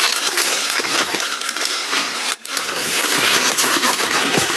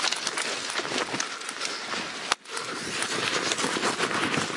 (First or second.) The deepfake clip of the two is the first